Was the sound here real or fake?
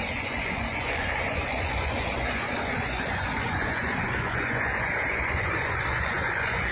fake